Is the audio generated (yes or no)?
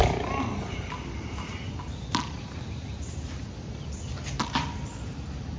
no